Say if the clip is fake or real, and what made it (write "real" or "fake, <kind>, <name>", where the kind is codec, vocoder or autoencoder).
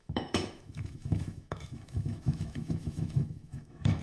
fake, autoencoder, DAC-VAE